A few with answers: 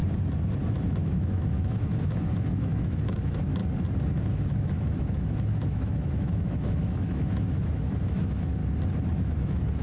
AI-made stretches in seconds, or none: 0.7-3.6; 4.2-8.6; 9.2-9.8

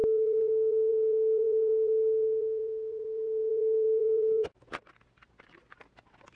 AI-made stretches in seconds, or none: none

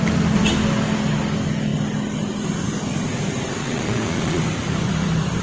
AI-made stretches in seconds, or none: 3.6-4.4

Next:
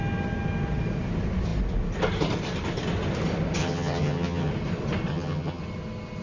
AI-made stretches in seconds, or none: 3.6-4.5; 5.1-5.6